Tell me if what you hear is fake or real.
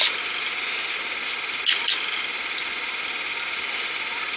real